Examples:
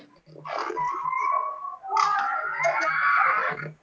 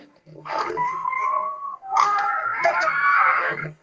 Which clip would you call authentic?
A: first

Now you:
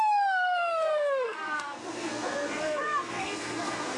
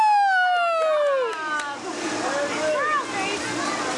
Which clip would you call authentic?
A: second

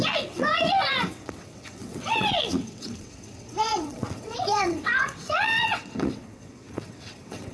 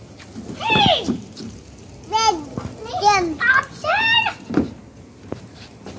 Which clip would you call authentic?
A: second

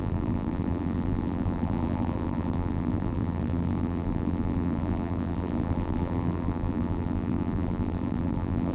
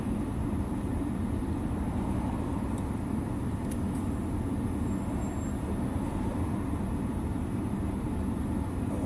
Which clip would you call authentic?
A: second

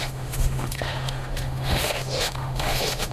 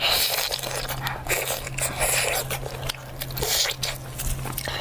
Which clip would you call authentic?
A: second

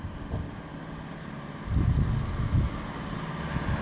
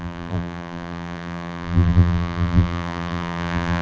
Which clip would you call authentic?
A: first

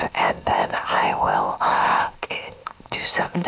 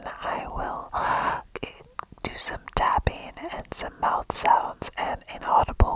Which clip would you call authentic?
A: second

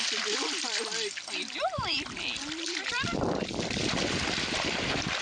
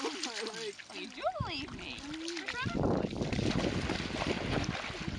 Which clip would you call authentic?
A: second